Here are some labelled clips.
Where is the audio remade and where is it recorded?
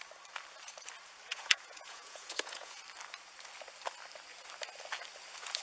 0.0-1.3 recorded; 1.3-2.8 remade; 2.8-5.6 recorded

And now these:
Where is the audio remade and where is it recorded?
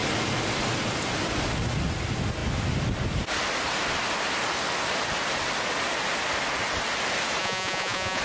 0.0-7.4 recorded; 7.4-8.2 remade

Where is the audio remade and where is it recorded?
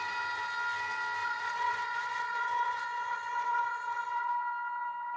0.0-1.2 recorded; 1.2-4.3 remade; 4.3-5.2 recorded